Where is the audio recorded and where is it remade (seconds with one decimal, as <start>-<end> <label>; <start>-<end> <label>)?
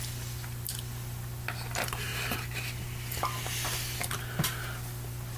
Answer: 0.0-5.4 recorded